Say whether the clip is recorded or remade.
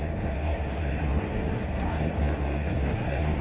remade